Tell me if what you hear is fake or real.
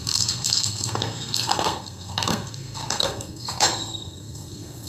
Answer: fake